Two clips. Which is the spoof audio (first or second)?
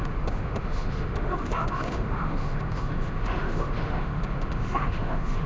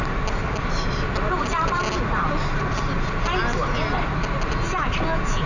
first